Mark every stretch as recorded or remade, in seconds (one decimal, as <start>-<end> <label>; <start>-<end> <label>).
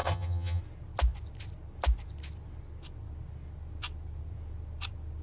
0.0-0.6 remade; 0.6-5.2 recorded